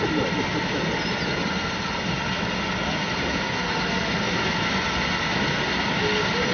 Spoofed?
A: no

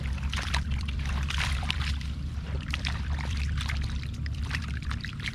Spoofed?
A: yes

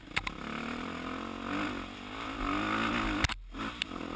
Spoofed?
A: no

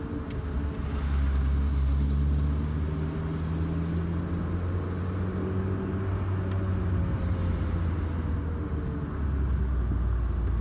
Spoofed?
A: no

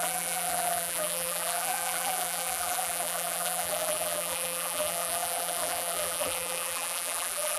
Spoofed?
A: yes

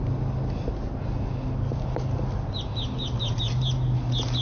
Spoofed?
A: no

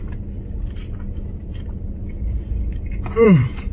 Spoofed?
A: yes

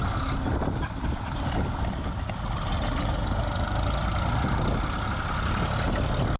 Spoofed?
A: no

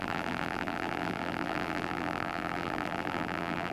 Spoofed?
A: yes